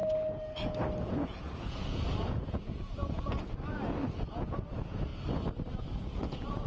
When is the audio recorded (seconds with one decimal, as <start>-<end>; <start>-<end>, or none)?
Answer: 0.0-1.0; 5.1-5.7